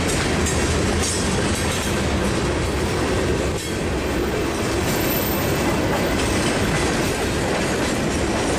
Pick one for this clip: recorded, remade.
recorded